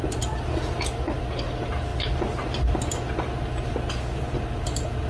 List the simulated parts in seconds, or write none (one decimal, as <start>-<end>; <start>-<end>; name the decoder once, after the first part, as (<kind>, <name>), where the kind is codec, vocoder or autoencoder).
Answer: 1.9-2.7 (vocoder, BigVGAN v2)